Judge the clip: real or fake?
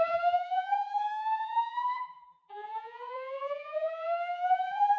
fake